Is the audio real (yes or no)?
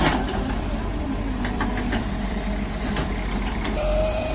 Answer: no